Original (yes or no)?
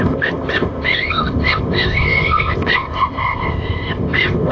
no